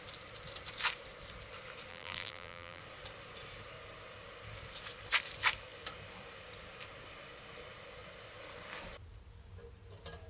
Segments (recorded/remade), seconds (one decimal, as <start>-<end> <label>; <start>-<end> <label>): 0.0-1.9 recorded; 1.9-2.8 remade; 2.8-10.3 recorded